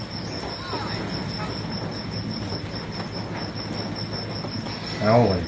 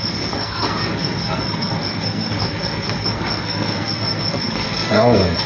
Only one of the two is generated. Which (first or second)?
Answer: second